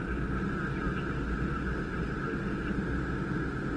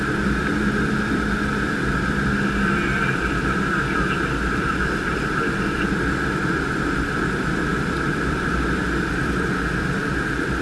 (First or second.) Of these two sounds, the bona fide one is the first